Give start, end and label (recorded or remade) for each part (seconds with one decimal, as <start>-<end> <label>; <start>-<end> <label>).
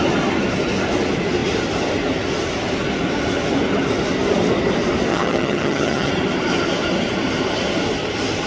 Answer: 0.0-5.1 recorded; 5.1-6.1 remade; 6.1-8.5 recorded